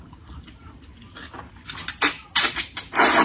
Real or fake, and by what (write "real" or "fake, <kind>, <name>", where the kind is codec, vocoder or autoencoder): real